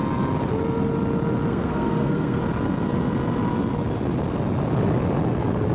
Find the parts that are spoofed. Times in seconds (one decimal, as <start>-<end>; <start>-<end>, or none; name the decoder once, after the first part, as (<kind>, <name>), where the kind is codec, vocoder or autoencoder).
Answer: 1.5-2.4 (codec, SNAC)